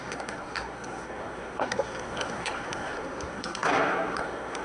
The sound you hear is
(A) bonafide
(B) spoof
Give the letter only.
B